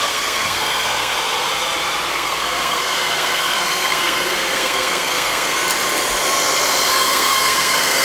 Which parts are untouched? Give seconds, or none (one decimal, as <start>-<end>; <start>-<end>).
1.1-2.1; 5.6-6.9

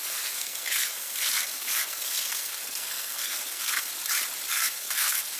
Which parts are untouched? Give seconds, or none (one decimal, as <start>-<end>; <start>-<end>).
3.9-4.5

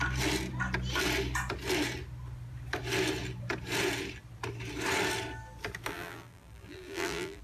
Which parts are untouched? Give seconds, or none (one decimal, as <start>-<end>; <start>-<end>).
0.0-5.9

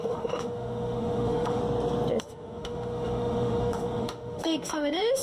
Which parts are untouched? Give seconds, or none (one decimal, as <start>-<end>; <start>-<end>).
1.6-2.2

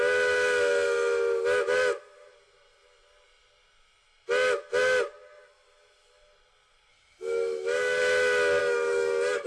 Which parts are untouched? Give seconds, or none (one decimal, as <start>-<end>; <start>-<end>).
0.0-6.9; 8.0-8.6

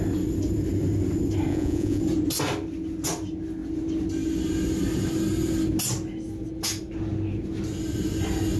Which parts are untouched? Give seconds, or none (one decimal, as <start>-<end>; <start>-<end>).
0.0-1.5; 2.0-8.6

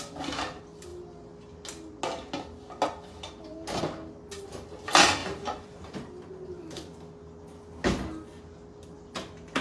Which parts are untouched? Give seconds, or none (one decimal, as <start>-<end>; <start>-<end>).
0.0-9.6

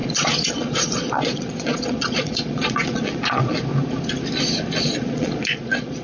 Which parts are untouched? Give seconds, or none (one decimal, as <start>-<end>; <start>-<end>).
3.5-4.8